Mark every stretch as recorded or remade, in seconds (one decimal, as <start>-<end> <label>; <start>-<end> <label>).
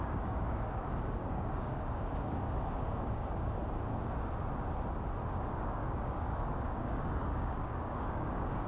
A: 0.0-3.6 remade; 3.6-5.4 recorded; 5.4-8.7 remade